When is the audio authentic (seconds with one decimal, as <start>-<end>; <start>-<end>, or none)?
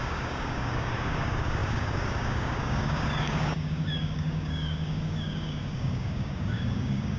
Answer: none